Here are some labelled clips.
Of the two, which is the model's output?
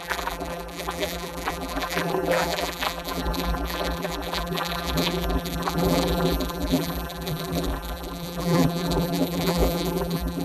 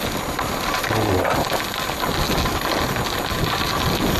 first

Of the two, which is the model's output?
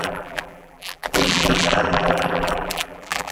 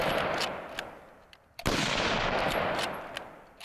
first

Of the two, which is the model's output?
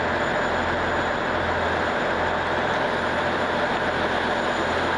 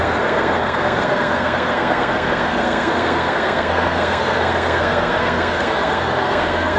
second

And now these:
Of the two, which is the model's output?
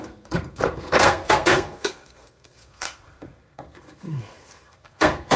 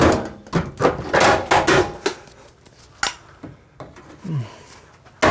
first